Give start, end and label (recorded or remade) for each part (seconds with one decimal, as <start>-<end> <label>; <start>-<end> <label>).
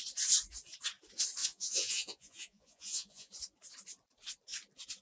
0.0-1.4 recorded; 1.4-3.3 remade; 3.3-5.0 recorded